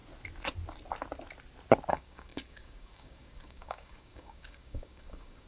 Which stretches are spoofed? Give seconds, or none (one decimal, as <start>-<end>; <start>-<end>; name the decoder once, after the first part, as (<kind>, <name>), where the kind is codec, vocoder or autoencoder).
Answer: 1.9-5.5 (codec, DAC)